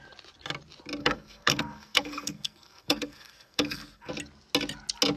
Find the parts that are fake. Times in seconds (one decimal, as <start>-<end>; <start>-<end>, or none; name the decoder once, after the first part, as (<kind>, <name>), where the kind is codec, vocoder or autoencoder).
1.0-4.1 (codec, SNAC)